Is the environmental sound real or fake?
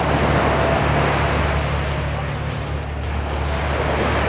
real